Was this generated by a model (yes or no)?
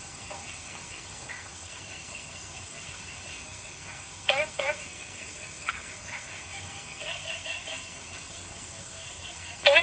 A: yes